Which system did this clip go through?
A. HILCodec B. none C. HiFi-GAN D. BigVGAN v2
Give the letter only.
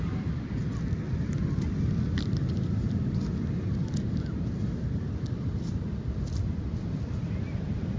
B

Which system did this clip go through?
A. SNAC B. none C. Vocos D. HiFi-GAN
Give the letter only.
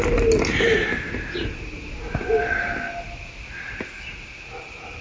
B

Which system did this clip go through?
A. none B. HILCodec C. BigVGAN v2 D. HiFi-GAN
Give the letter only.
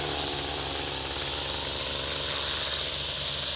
A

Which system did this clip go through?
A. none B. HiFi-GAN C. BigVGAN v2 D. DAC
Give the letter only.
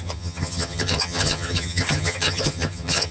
B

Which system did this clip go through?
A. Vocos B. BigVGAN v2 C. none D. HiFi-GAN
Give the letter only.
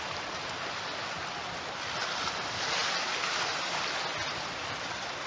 C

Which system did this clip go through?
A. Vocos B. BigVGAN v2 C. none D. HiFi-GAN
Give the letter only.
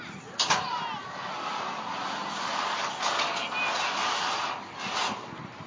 C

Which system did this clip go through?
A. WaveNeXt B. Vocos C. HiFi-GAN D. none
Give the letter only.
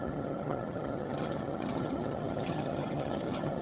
C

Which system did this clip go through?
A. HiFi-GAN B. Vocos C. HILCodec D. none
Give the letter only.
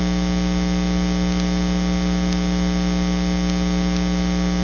D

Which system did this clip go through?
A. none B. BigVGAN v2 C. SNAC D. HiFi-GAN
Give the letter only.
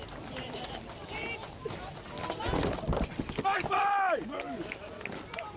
A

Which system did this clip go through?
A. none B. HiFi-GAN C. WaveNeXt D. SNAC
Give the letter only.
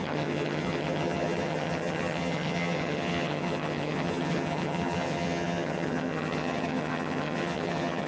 B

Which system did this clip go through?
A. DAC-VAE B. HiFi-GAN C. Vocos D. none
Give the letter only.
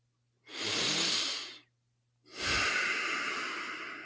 D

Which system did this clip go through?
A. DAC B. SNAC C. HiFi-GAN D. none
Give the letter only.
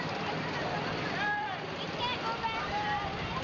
D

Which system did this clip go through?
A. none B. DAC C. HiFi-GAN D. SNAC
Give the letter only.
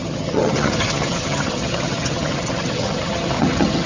C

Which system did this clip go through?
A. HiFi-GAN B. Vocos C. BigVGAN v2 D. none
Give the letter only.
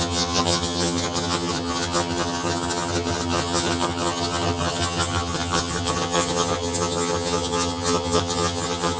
A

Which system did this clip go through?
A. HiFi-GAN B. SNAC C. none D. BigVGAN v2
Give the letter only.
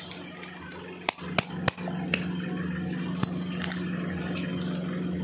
C